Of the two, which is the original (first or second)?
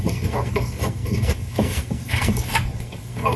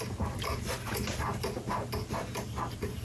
second